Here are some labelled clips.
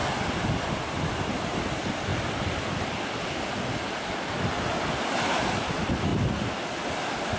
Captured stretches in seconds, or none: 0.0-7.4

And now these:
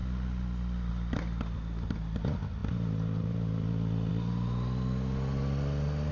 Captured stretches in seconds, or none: 0.0-6.1